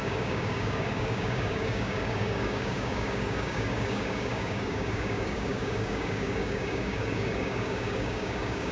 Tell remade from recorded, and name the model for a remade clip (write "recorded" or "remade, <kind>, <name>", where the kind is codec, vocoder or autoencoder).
remade, codec, DAC